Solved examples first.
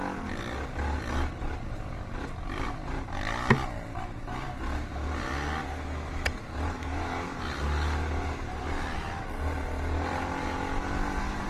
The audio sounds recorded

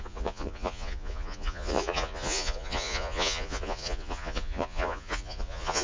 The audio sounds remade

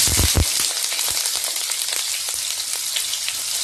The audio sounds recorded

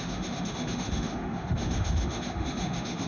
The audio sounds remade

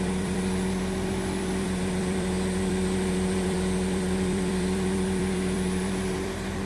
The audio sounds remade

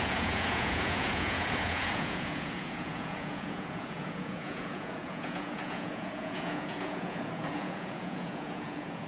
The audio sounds remade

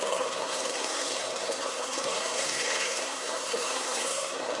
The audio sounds remade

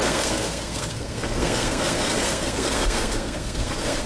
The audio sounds remade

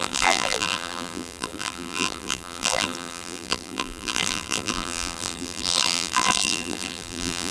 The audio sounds remade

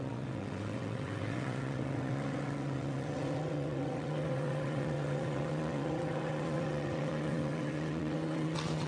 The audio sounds remade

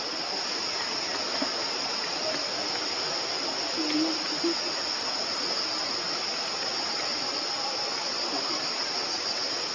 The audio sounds recorded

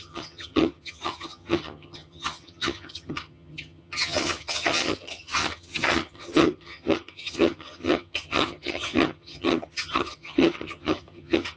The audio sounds remade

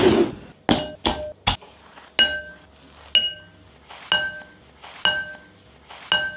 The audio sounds recorded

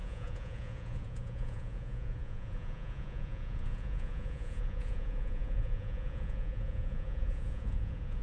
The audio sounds remade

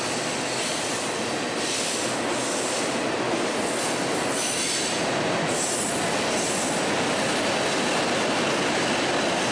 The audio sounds recorded